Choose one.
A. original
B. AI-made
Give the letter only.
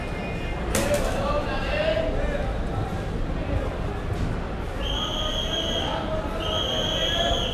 A